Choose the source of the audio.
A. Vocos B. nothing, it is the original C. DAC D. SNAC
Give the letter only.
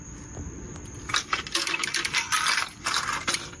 B